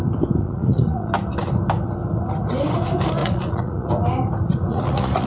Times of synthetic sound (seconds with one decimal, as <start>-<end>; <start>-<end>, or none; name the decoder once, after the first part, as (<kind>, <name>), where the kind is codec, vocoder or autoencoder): 0.4-1.1 (vocoder, Vocos); 3.2-3.9; 4.7-5.3